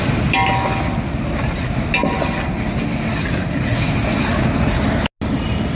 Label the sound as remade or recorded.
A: recorded